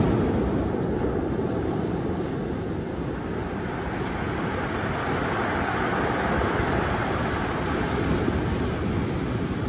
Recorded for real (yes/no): yes